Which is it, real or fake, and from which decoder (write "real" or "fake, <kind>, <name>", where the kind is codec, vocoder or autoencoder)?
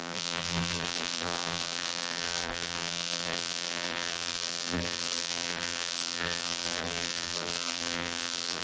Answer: fake, vocoder, BigVGAN v2